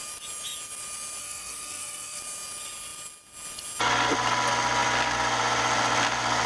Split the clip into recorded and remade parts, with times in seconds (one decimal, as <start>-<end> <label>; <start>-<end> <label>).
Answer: 0.0-1.2 recorded; 1.2-2.2 remade; 2.2-6.5 recorded